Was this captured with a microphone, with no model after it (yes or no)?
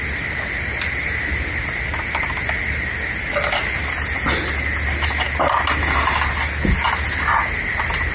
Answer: yes